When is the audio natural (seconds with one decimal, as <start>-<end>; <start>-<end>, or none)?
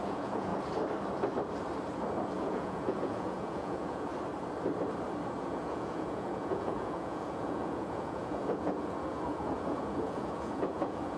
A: 0.5-2.4; 4.1-5.4